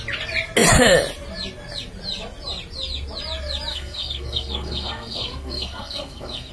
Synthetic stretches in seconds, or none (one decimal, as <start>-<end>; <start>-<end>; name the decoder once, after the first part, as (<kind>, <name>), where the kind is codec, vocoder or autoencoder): 3.7-6.5 (codec, SNAC)